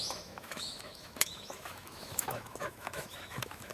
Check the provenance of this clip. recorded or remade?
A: remade